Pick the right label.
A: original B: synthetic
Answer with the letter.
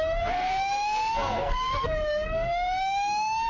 B